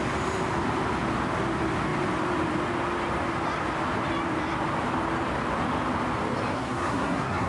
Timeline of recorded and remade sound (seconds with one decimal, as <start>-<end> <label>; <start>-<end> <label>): 0.0-6.5 recorded; 6.5-7.5 remade